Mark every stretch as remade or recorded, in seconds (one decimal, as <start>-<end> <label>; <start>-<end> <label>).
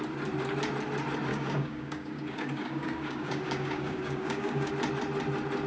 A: 0.0-1.3 recorded; 1.3-4.7 remade; 4.7-5.7 recorded